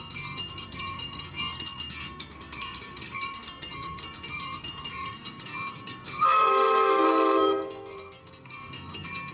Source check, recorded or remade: remade